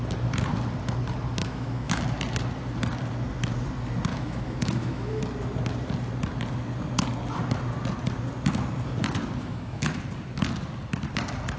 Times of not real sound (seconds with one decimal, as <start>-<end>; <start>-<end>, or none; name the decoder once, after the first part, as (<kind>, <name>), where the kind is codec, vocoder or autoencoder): 1.4-2.0 (autoencoder, DAC-VAE); 4.1-5.2; 9.4-10.0